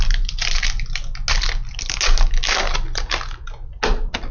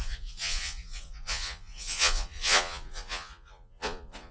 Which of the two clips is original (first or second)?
first